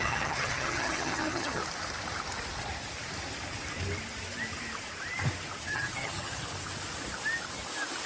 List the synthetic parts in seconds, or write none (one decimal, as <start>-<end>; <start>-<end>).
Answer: 0.0-1.6; 5.6-6.4